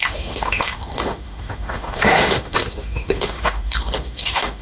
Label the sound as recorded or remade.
remade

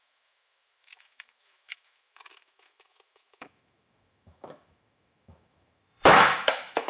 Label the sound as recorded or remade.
remade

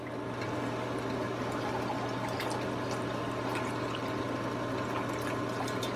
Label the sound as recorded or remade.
recorded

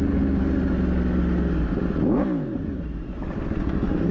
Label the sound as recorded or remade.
recorded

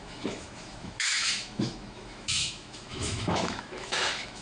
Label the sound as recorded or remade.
remade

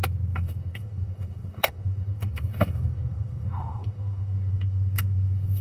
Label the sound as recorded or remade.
remade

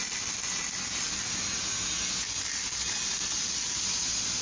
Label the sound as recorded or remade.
recorded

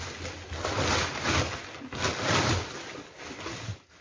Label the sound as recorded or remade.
recorded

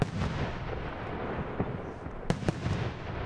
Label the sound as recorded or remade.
recorded